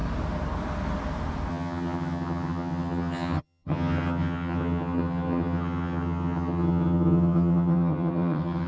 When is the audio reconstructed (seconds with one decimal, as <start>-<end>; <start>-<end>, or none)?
1.5-8.7

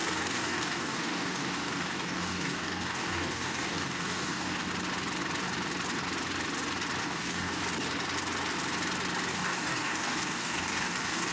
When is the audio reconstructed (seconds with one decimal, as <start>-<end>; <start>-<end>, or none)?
0.0-4.7; 7.0-7.6; 9.3-11.3

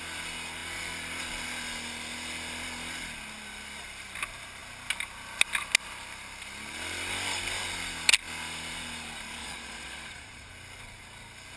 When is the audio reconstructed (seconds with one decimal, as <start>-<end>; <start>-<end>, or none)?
9.4-10.5

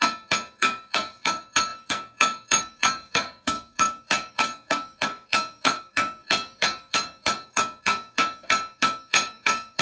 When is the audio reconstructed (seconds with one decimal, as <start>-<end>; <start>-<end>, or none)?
0.0-9.8